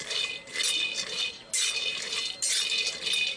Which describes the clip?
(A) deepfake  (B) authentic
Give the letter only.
B